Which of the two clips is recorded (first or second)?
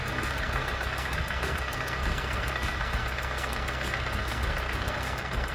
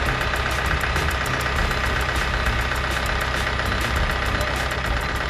second